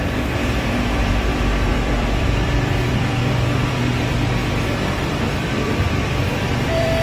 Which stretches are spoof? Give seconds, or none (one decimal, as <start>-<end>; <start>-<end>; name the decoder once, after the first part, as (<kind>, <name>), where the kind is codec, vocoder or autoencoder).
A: 0.0-7.0 (vocoder, BigVGAN v2)